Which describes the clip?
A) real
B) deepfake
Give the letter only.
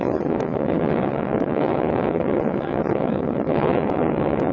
B